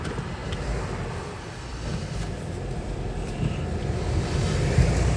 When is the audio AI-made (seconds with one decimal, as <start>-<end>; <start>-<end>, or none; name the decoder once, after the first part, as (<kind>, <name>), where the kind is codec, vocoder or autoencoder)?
1.9-4.4 (vocoder, BigVGAN v2)